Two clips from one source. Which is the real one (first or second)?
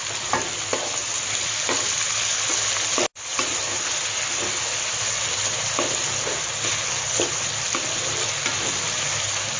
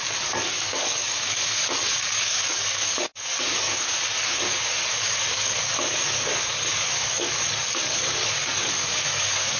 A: first